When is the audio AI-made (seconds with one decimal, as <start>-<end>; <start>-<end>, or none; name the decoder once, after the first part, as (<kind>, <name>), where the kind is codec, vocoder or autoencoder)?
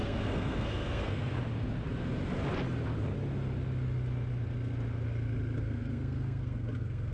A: 0.0-1.3 (codec, SNAC); 5.6-7.1